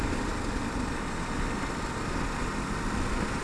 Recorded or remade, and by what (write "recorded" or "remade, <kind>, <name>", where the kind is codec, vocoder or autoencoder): recorded